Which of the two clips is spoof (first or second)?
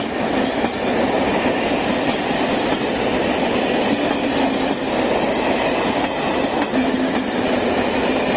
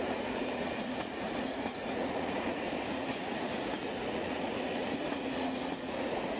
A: second